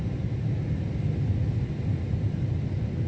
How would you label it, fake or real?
real